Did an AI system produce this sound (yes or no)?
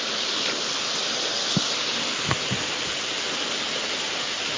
no